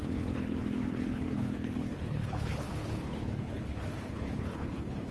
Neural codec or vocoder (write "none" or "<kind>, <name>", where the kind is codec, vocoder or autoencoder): codec, HILCodec